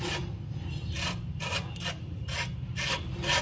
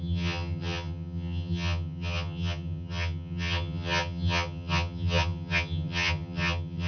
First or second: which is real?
first